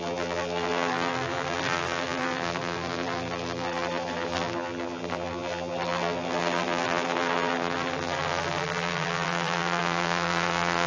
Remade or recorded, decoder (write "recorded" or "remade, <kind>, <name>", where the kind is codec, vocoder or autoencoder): remade, vocoder, BigVGAN v2